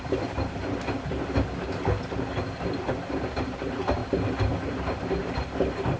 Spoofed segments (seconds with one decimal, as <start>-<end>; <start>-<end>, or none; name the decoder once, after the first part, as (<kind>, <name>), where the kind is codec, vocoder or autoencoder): 5.2-6.0 (vocoder, BigVGAN v2)